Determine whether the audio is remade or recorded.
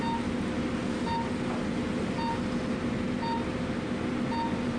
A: recorded